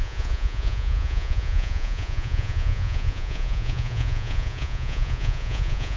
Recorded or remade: remade